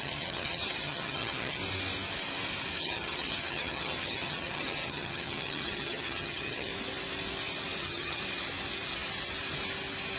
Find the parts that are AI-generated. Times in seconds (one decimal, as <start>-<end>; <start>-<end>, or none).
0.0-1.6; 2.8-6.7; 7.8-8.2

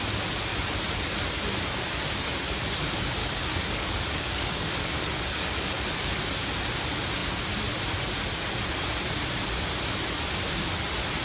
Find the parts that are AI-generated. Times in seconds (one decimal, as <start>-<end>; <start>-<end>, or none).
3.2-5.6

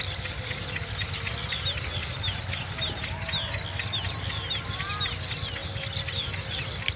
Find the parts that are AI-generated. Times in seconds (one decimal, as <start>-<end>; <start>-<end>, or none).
none